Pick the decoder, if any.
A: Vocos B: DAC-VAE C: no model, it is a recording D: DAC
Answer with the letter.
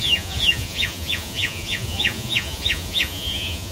A